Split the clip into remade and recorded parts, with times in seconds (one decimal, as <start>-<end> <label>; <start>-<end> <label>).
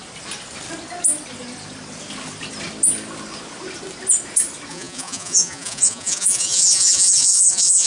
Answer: 0.0-4.7 recorded; 4.7-7.9 remade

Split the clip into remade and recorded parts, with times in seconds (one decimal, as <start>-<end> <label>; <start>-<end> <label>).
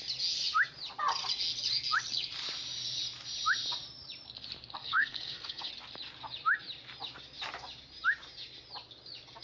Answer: 0.0-4.8 recorded; 4.8-5.7 remade; 5.7-9.4 recorded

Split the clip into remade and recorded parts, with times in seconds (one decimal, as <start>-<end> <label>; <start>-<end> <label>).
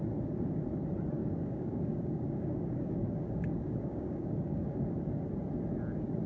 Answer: 0.0-1.2 recorded; 1.2-4.8 remade; 4.8-6.3 recorded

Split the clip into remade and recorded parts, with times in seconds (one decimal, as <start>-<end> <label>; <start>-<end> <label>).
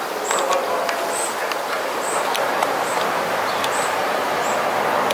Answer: 0.0-1.4 recorded; 1.4-4.5 remade; 4.5-5.1 recorded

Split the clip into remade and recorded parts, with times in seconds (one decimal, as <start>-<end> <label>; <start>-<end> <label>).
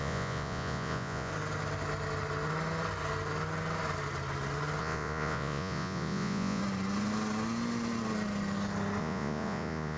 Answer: 0.0-1.3 remade; 1.3-4.8 recorded; 4.8-6.6 remade; 6.6-9.0 recorded; 9.0-10.0 remade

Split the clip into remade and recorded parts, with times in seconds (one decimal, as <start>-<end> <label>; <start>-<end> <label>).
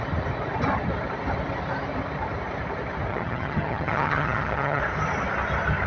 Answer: 0.0-3.1 recorded; 3.1-4.8 remade; 4.8-5.9 recorded